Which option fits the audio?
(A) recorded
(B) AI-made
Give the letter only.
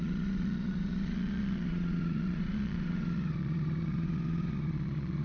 B